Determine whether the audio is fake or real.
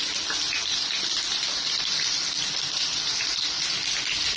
real